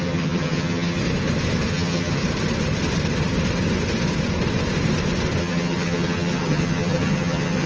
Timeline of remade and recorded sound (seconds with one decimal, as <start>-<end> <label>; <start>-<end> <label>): 0.0-1.0 remade; 1.0-1.7 recorded; 1.7-2.2 remade; 2.2-5.4 recorded; 5.4-7.7 remade

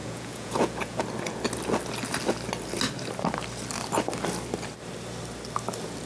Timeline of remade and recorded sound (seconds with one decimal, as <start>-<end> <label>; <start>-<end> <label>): 0.0-1.0 remade; 1.0-6.1 recorded

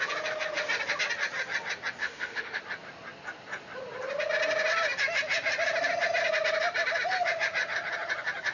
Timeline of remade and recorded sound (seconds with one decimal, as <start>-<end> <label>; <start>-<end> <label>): 0.0-2.0 recorded; 2.0-2.6 remade; 2.6-8.5 recorded

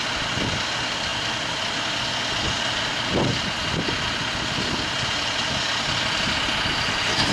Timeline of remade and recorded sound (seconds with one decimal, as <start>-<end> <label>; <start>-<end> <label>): 0.0-7.3 recorded